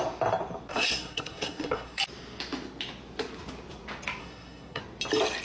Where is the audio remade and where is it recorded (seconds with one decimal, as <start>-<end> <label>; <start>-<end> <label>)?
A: 0.0-0.7 recorded; 0.7-2.0 remade; 2.0-4.2 recorded; 4.2-4.8 remade; 4.8-5.4 recorded